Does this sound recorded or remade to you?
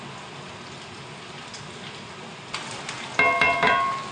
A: recorded